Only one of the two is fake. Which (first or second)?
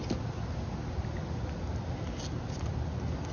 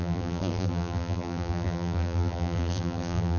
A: second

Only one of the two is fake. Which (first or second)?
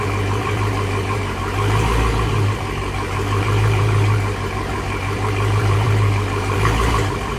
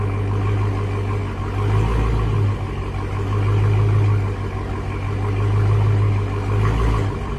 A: first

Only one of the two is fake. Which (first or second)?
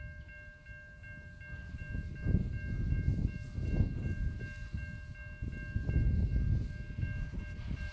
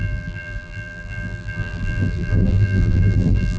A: second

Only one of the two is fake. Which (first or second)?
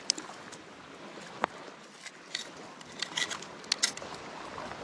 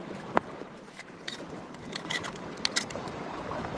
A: second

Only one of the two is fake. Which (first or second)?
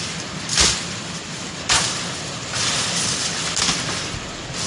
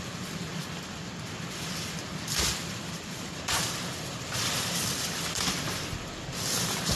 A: second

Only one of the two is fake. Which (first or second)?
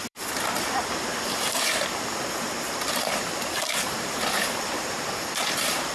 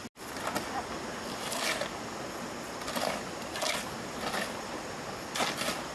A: first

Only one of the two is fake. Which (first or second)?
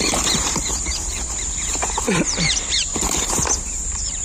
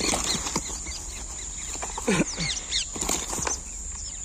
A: first